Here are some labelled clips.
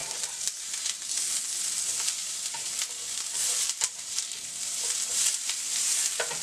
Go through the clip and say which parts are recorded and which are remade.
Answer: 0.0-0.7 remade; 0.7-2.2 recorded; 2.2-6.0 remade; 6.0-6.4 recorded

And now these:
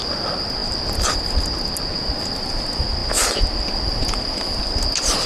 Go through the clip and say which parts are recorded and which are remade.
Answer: 0.0-5.3 recorded

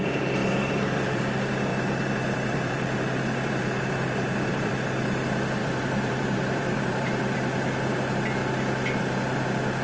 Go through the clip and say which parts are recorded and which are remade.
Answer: 0.0-0.4 recorded; 0.4-1.2 remade; 1.2-1.7 recorded; 1.7-4.7 remade; 4.7-5.6 recorded; 5.6-7.4 remade; 7.4-9.8 recorded

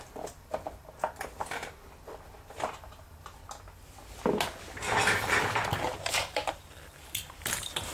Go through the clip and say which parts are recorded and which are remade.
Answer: 0.0-0.5 remade; 0.5-2.5 recorded; 2.5-3.4 remade; 3.4-6.1 recorded; 6.1-7.9 remade

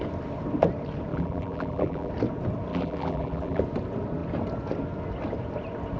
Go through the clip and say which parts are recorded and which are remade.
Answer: 0.0-1.1 recorded; 1.1-2.1 remade; 2.1-2.7 recorded; 2.7-3.6 remade; 3.6-6.0 recorded

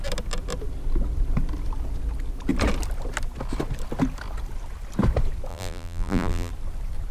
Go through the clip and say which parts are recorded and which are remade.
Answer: 0.0-5.5 recorded; 5.5-6.5 remade; 6.5-7.1 recorded

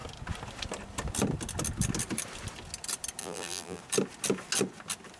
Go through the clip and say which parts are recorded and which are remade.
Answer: 0.0-3.2 recorded; 3.2-3.8 remade; 3.8-5.2 recorded

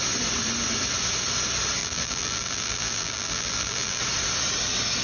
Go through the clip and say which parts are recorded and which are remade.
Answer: 0.0-1.8 recorded; 1.8-4.0 remade; 4.0-5.0 recorded